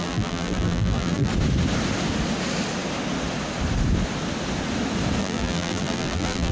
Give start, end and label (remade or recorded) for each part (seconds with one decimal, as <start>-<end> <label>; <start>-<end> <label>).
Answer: 0.0-1.3 remade; 1.3-5.2 recorded; 5.2-6.5 remade